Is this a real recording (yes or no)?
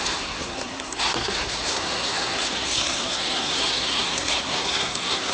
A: no